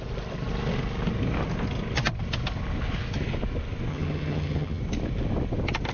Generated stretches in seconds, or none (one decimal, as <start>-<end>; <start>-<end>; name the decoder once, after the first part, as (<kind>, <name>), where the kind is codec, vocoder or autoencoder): 3.9-4.8 (vocoder, HiFi-GAN)